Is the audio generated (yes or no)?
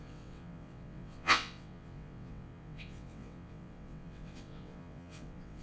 yes